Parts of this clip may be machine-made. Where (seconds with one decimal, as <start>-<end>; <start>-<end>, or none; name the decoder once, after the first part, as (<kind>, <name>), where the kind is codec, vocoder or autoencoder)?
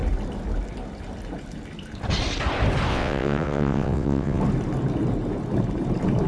2.9-4.4 (vocoder, WaveNeXt)